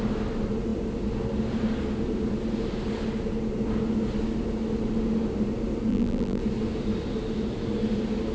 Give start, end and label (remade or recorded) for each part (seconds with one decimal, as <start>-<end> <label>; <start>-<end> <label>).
0.0-5.9 recorded; 5.9-6.4 remade; 6.4-8.3 recorded